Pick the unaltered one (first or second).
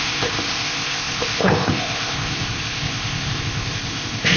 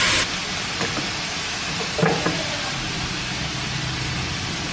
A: second